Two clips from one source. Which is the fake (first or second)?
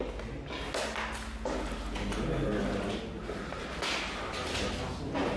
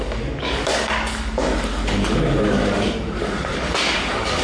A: second